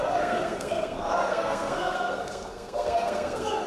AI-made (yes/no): yes